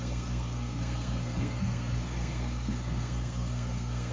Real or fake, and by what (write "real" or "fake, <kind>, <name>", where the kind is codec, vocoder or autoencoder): fake, codec, SNAC